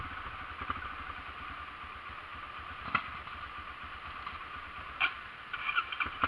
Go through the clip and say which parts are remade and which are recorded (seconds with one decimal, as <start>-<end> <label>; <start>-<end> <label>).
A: 0.0-6.3 recorded